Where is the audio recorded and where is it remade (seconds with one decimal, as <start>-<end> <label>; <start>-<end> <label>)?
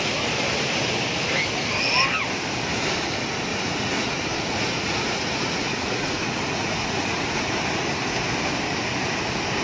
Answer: 0.0-3.5 recorded; 3.5-7.6 remade; 7.6-9.6 recorded